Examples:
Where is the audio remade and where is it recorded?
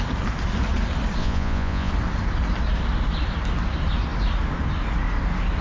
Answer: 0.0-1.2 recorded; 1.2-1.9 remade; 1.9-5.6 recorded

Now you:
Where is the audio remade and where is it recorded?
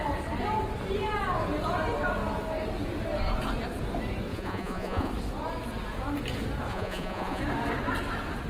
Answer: 0.0-4.3 recorded; 4.3-5.1 remade; 5.1-6.7 recorded; 6.7-7.4 remade; 7.4-8.5 recorded